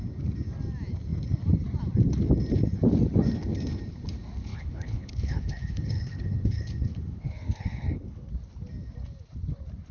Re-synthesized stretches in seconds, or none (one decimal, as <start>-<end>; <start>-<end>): 4.5-8.3

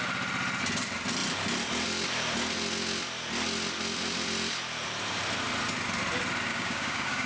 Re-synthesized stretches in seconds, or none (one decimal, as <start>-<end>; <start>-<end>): 6.5-7.3

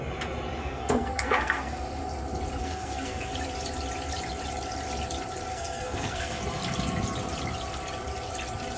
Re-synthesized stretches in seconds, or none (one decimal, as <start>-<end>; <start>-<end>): 0.6-1.8; 2.6-3.3; 5.5-6.4

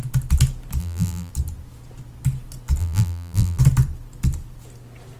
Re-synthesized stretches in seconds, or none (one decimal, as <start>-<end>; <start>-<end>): 0.8-1.3; 2.8-3.6

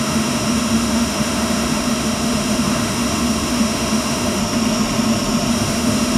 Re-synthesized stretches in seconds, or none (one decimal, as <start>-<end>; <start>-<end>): 0.0-4.4; 5.5-6.2

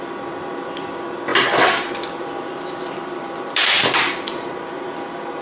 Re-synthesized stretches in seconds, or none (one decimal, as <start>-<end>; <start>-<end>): none

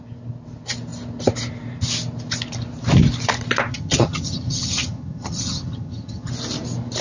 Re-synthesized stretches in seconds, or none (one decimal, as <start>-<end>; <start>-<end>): 3.7-6.3

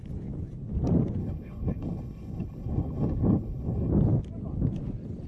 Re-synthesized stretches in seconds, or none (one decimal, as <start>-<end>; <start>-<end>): 1.2-3.9